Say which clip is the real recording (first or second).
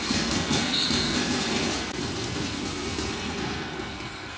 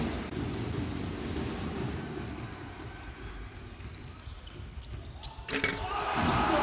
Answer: second